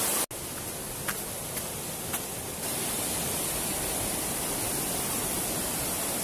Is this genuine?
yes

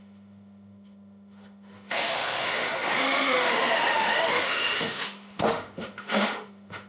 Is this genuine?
no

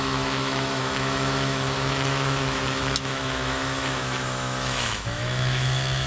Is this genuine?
no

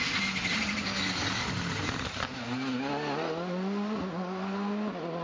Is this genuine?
yes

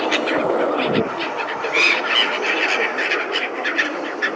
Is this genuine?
yes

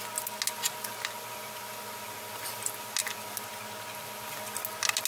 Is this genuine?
yes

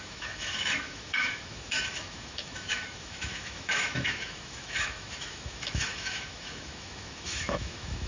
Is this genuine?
no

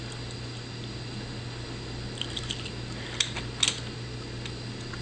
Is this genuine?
yes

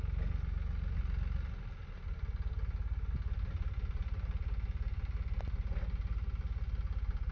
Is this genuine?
yes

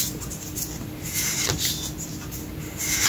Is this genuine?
yes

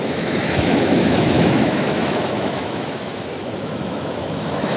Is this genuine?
no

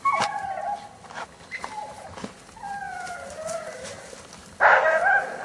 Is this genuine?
yes